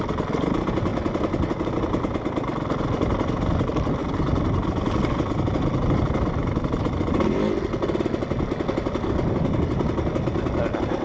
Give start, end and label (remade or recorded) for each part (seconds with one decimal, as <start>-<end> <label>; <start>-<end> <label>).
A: 0.0-11.0 recorded